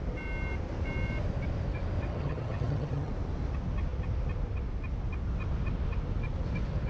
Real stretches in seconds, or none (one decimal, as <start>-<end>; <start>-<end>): 0.0-2.1; 3.1-6.9